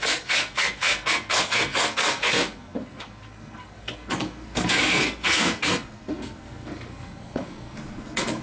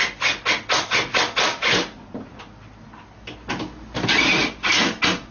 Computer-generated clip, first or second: first